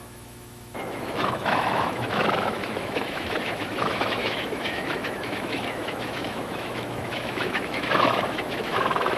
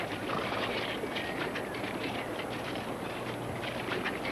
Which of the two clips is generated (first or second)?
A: first